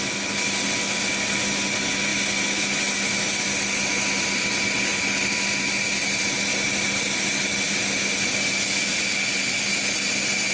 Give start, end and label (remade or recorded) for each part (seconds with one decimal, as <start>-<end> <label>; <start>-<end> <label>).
0.0-10.5 recorded